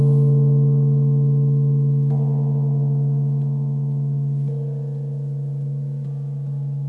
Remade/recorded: recorded